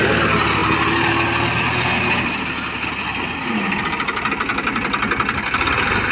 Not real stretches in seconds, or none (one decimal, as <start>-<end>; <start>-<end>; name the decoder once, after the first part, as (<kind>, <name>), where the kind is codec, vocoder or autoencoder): none